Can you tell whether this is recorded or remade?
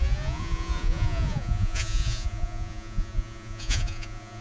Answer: remade